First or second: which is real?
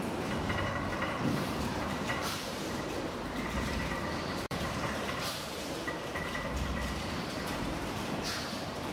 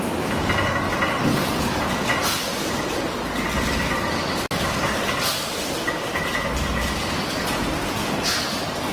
second